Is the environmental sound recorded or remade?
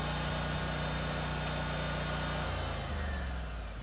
recorded